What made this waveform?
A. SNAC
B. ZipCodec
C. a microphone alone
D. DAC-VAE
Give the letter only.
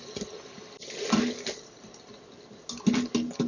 C